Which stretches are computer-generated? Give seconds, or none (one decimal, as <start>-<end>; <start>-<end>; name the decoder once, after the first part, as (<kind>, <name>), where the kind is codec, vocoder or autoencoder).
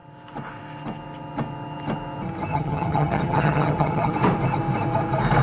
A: 2.5-4.1 (vocoder, HiFi-GAN)